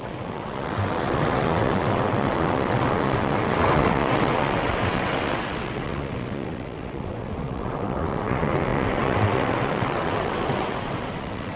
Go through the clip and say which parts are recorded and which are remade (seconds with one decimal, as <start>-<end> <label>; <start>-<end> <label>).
0.0-11.6 remade